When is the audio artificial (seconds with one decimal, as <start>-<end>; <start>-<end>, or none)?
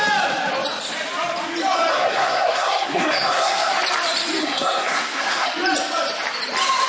1.9-3.7; 4.4-5.5